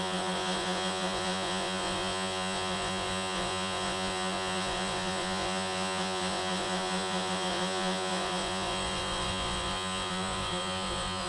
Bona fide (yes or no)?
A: no